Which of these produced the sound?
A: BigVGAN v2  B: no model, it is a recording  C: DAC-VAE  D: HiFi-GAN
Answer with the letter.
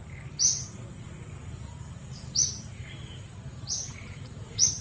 A